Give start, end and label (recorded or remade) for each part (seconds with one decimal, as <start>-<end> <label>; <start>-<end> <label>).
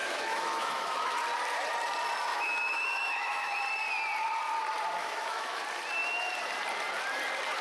0.0-1.1 remade; 1.1-2.3 recorded; 2.3-3.6 remade; 3.6-5.0 recorded; 5.0-5.6 remade; 5.6-7.6 recorded